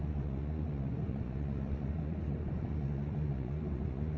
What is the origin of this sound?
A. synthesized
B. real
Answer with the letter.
A